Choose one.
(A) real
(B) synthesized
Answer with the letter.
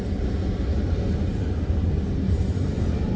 A